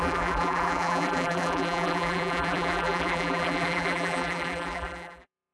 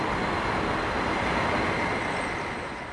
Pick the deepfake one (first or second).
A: first